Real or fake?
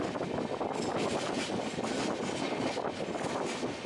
real